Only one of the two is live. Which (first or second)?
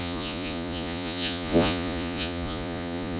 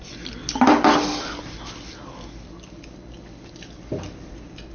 second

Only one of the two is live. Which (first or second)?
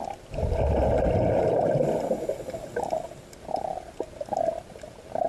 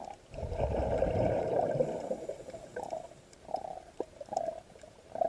first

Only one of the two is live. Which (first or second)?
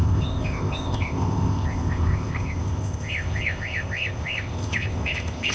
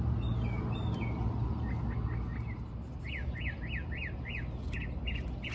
second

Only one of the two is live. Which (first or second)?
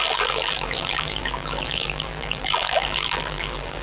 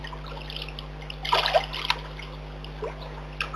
second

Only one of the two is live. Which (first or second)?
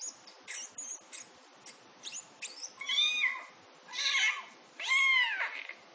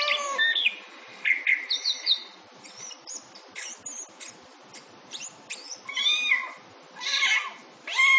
first